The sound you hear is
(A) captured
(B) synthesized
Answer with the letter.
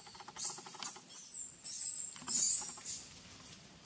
A